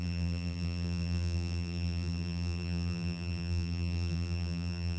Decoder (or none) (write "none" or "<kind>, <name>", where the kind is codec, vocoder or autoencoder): vocoder, BigVGAN v2